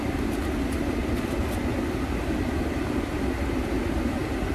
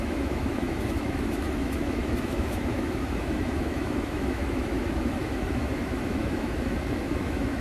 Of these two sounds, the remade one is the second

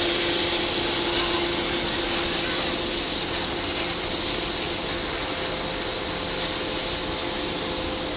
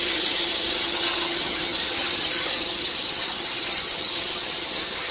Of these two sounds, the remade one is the second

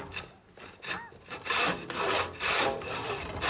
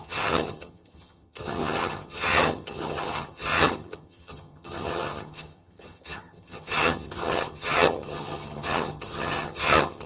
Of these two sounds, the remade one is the second